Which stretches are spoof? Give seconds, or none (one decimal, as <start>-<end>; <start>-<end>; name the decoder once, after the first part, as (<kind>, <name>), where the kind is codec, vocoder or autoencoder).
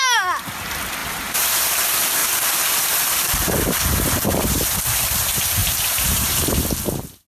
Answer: 1.0-1.7 (vocoder, BigVGAN v2); 5.6-6.6